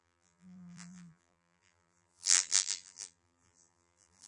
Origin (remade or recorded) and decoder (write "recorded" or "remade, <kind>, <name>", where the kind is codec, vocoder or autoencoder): remade, vocoder, BigVGAN v2